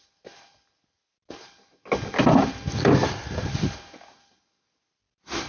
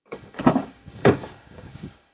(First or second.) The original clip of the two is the first